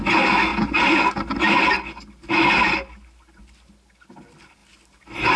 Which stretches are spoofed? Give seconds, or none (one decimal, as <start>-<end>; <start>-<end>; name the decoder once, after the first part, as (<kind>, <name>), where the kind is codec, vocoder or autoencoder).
none